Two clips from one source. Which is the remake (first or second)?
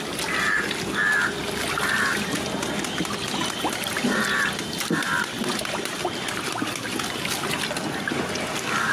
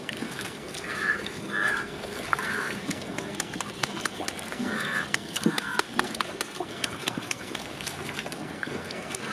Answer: second